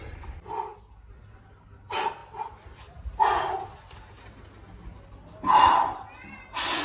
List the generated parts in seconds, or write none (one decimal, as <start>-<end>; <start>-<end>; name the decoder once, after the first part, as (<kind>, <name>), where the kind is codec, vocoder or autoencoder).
none